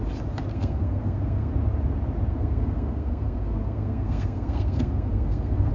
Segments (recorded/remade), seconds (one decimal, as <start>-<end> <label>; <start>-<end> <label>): 0.0-0.5 recorded; 0.5-1.5 remade; 1.5-2.3 recorded; 2.3-5.7 remade